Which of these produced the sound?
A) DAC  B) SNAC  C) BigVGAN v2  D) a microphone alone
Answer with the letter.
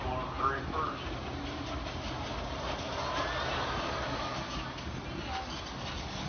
D